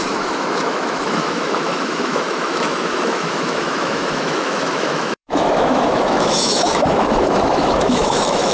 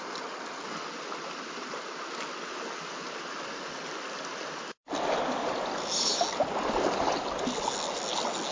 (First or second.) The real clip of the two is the second